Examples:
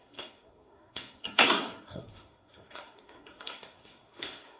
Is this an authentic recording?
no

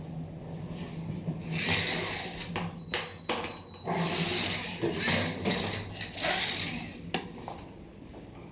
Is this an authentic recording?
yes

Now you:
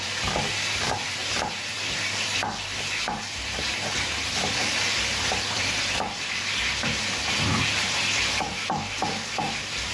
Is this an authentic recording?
no